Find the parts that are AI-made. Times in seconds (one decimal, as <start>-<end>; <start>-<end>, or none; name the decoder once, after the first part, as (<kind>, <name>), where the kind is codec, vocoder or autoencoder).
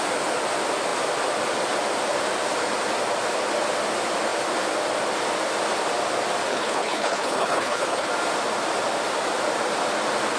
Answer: 6.5-8.1 (codec, HILCodec)